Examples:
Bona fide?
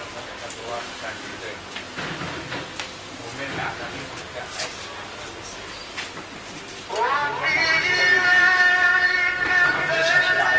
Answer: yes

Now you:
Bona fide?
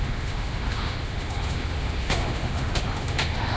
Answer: no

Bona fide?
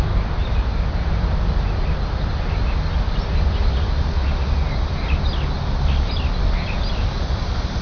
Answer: yes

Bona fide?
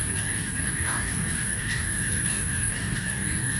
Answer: no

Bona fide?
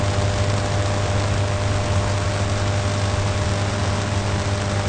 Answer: yes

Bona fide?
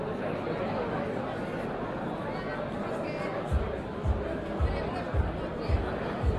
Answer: yes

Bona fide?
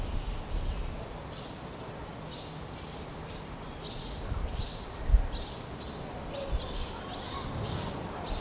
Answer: yes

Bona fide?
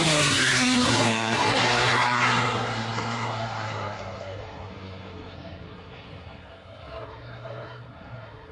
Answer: no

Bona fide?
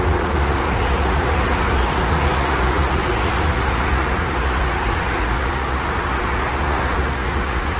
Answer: no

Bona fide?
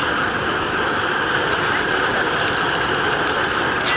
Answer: yes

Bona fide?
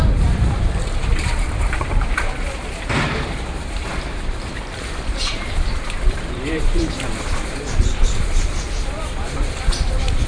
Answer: no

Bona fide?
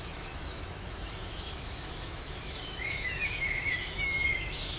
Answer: no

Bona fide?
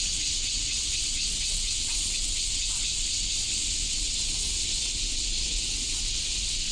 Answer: no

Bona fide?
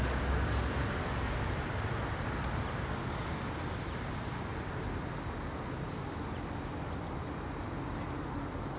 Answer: yes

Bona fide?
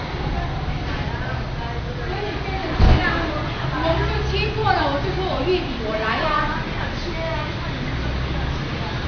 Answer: yes